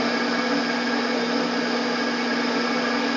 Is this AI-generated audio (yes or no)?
no